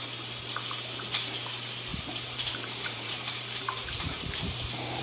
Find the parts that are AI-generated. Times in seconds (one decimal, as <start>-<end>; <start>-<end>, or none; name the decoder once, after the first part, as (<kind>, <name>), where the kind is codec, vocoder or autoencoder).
1.9-5.0 (vocoder, BigVGAN v2)